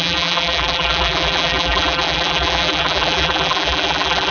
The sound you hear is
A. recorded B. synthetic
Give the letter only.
B